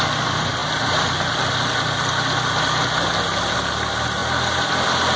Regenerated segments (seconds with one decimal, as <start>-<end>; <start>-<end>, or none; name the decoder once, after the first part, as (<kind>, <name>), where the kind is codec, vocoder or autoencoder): none

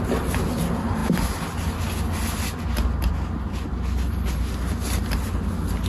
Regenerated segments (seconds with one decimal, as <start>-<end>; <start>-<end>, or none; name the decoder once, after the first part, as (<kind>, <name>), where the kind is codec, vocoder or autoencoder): none